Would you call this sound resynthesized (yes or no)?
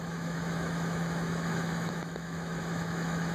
yes